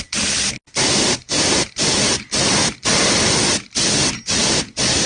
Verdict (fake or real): real